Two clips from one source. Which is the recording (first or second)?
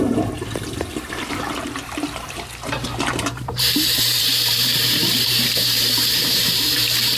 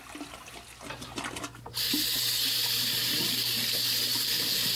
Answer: second